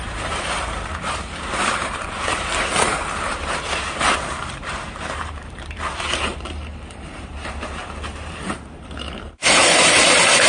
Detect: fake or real fake